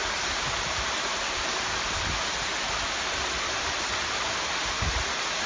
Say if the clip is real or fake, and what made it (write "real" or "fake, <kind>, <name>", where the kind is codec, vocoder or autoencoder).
real